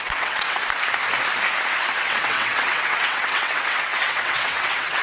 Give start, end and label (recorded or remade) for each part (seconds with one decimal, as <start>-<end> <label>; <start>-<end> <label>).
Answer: 0.0-0.6 remade; 0.6-1.8 recorded; 1.8-5.0 remade